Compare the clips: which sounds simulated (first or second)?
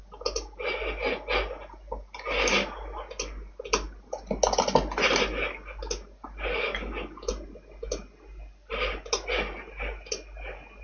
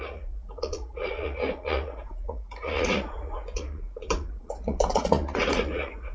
second